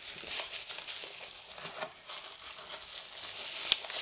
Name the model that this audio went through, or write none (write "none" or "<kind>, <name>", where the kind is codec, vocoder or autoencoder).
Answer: none